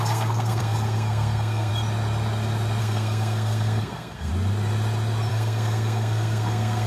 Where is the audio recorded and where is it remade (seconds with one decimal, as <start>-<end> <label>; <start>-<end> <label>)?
0.0-1.7 remade; 1.7-2.8 recorded; 2.8-4.3 remade; 4.3-5.3 recorded; 5.3-6.9 remade